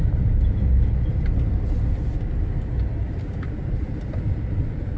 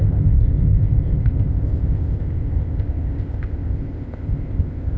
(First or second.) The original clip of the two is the first